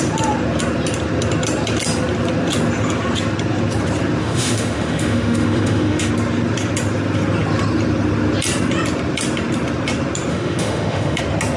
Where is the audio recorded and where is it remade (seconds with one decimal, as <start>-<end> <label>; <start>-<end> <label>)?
0.0-4.2 recorded; 4.2-6.1 remade; 6.1-10.3 recorded; 10.3-11.2 remade; 11.2-11.6 recorded